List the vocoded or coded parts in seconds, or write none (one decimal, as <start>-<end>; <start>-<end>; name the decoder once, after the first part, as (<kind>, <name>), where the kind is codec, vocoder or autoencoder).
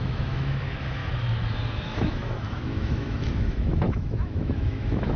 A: 0.0-1.0 (autoencoder, DAC-VAE); 1.8-5.2